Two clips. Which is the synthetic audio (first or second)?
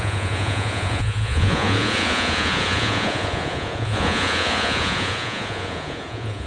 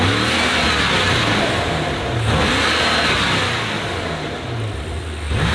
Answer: first